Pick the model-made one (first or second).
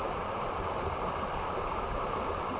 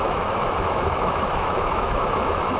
second